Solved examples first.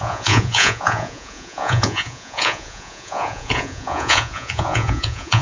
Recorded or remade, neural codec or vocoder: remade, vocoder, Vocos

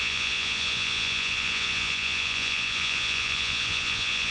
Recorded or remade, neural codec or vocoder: remade, vocoder, Vocos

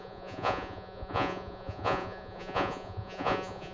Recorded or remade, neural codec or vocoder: remade, vocoder, Vocos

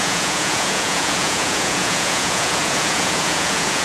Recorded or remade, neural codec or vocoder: remade, vocoder, Vocos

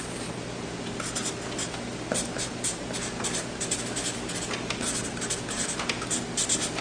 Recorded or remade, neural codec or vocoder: recorded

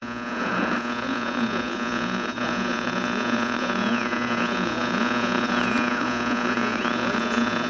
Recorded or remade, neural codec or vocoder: remade, vocoder, Vocos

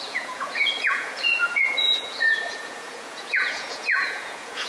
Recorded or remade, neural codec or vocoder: remade, vocoder, Vocos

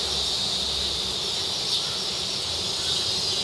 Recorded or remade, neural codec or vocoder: recorded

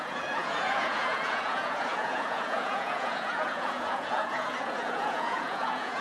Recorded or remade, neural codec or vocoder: remade, vocoder, Vocos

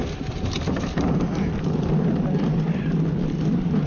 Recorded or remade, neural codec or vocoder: recorded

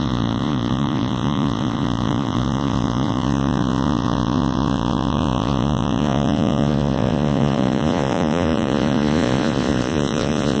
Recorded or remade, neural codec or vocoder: remade, vocoder, Vocos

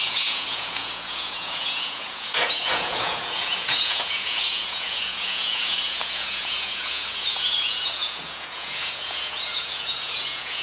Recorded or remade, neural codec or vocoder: remade, vocoder, Vocos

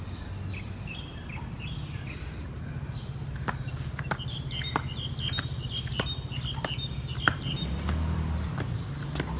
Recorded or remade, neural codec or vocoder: recorded